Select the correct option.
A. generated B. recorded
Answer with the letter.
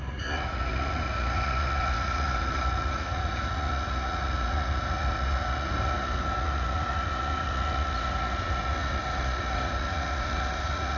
A